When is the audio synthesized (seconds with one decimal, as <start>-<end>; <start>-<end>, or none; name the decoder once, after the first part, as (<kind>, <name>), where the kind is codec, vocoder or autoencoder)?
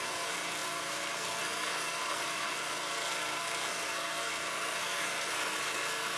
0.0-6.2 (codec, SNAC)